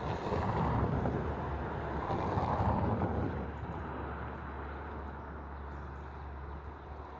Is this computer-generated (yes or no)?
no